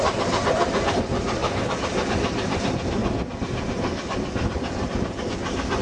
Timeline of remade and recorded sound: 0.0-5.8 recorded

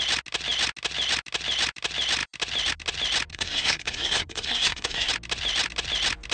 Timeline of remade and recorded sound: 0.0-3.3 recorded; 3.3-5.1 remade; 5.1-6.3 recorded